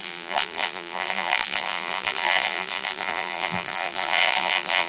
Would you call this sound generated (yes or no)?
yes